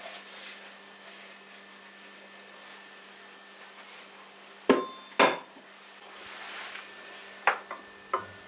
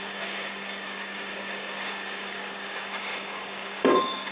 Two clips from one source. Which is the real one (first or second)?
first